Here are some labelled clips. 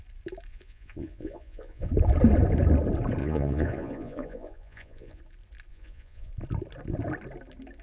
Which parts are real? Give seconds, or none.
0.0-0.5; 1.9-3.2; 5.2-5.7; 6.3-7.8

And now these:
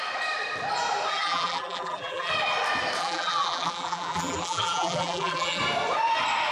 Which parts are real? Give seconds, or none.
0.0-1.1; 2.3-3.0; 5.6-6.5

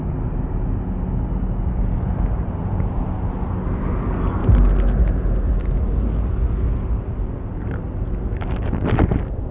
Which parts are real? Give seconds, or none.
0.0-9.5

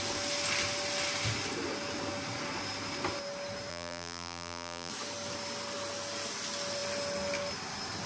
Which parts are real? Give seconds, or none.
0.0-3.7; 4.9-8.1

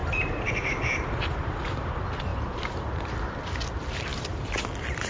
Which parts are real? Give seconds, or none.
1.9-2.3; 2.9-4.1; 4.6-5.1